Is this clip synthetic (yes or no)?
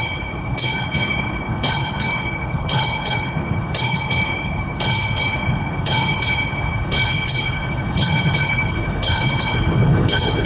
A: yes